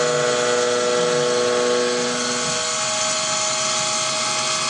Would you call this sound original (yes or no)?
yes